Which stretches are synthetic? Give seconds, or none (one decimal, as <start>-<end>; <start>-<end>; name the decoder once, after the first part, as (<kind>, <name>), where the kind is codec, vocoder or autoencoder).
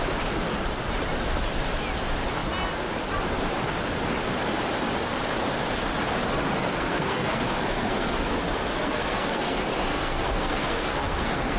6.6-11.6 (codec, SNAC)